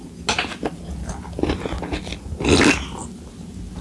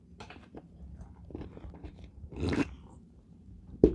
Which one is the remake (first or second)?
second